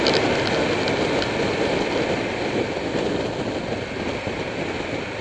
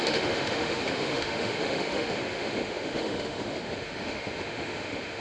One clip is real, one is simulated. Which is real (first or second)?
first